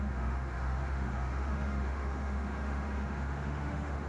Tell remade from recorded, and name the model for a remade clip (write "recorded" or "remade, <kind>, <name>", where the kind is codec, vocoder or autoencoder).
remade, autoencoder, DAC-VAE